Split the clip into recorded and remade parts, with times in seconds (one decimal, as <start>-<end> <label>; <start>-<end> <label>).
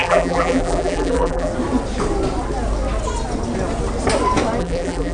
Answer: 0.0-1.5 remade; 1.5-4.6 recorded; 4.6-5.1 remade